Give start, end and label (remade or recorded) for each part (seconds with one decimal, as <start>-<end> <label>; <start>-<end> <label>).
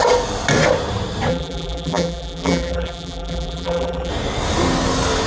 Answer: 0.0-1.3 recorded; 1.3-4.1 remade; 4.1-5.3 recorded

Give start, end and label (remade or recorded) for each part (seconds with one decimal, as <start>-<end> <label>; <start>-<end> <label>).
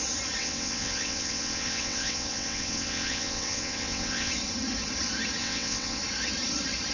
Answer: 0.0-0.4 recorded; 0.4-4.3 remade; 4.3-5.4 recorded; 5.4-6.0 remade; 6.0-6.9 recorded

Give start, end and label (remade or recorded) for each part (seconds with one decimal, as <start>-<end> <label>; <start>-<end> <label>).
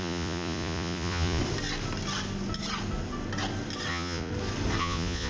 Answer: 0.0-1.4 remade; 1.4-3.9 recorded; 3.9-4.3 remade; 4.3-4.8 recorded; 4.8-5.3 remade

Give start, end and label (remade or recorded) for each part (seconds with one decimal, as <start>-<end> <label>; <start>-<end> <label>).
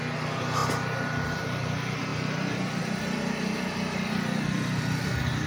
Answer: 0.0-5.5 recorded